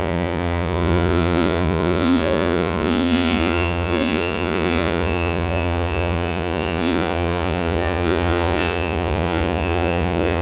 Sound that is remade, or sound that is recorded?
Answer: remade